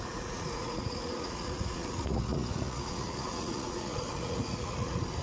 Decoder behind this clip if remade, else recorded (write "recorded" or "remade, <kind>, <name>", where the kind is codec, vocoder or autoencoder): remade, vocoder, Vocos